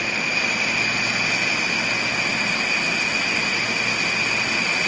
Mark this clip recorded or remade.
recorded